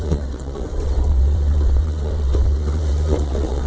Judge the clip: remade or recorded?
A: remade